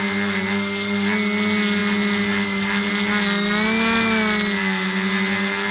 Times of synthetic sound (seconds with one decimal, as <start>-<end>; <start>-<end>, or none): none